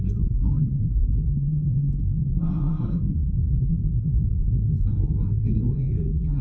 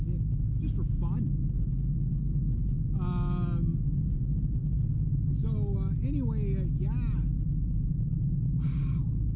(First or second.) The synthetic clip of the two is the first